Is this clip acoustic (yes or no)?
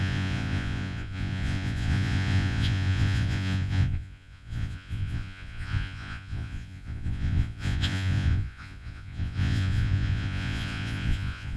no